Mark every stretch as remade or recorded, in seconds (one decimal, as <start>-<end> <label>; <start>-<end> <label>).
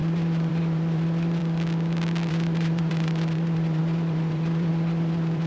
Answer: 0.0-1.4 remade; 1.4-2.3 recorded; 2.3-5.5 remade